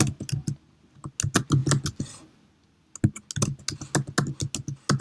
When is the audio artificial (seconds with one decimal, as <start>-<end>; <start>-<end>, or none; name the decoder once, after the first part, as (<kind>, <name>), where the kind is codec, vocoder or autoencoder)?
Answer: 0.4-1.0 (vocoder, BigVGAN v2)